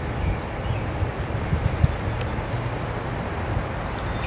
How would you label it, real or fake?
real